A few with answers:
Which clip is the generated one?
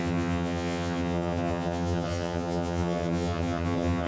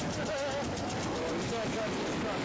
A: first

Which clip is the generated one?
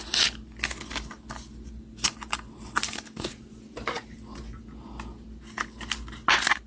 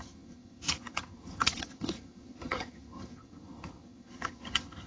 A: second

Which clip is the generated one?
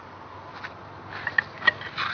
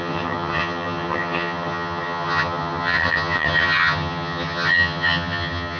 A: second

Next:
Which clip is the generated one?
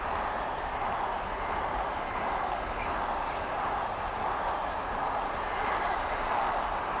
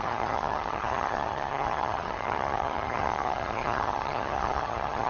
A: second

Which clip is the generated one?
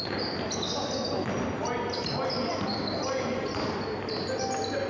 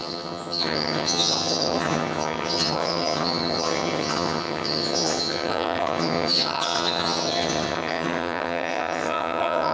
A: second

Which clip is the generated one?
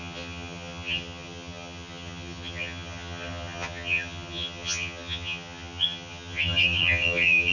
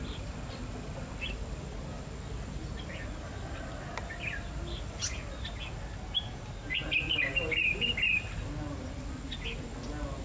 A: first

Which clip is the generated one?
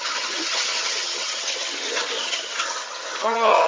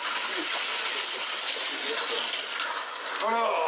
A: first